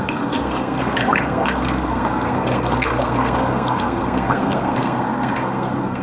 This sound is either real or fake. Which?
fake